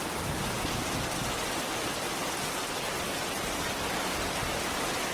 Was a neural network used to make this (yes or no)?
no